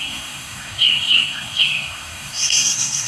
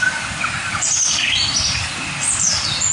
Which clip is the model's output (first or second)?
first